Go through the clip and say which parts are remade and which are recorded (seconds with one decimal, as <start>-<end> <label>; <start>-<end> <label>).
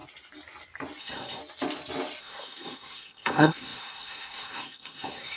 0.0-1.0 recorded; 1.0-1.4 remade; 1.4-2.2 recorded; 2.2-5.4 remade